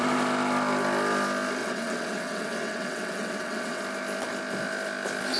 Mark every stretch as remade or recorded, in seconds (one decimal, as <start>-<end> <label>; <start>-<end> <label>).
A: 0.0-1.6 recorded; 1.6-3.8 remade; 3.8-5.4 recorded